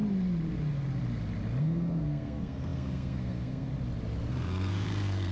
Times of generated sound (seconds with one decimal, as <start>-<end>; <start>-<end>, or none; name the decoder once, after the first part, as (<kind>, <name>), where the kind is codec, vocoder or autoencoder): 1.6-3.7 (codec, SNAC); 4.3-5.3